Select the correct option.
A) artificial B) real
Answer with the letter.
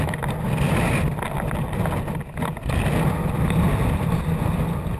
B